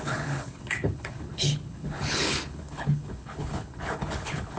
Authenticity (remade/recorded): remade